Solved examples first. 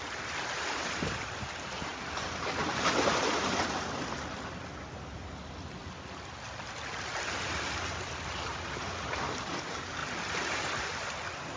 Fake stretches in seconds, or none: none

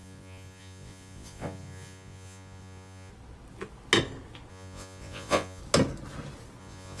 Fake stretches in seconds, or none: 0.0-3.1 (vocoder, Vocos); 4.5-5.6; 6.6-7.0